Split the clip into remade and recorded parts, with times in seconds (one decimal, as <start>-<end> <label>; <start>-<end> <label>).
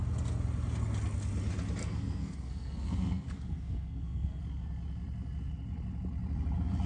0.0-1.8 recorded; 1.8-4.4 remade; 4.4-6.9 recorded